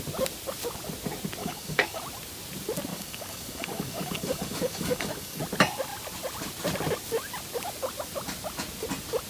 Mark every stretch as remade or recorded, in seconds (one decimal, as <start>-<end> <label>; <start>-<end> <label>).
0.0-1.4 recorded; 1.4-2.0 remade; 2.0-2.9 recorded; 2.9-5.4 remade; 5.4-9.3 recorded